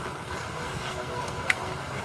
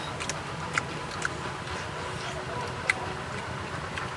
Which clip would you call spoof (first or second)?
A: first